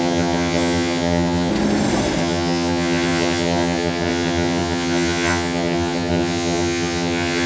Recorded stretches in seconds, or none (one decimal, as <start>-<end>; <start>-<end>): 1.5-2.2